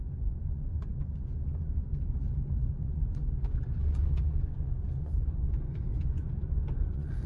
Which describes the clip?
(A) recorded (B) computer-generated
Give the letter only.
B